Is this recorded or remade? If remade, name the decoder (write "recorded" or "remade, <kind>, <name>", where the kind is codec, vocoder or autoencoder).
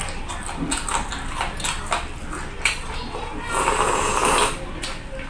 recorded